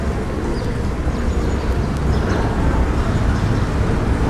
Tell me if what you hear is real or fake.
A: real